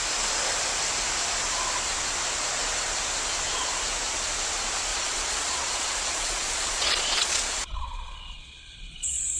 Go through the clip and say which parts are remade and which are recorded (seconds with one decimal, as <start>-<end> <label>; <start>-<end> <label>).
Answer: 0.0-4.9 recorded; 4.9-9.4 remade